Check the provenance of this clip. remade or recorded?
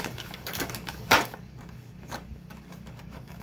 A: remade